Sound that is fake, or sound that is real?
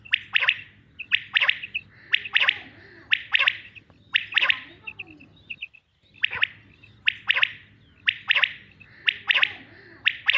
real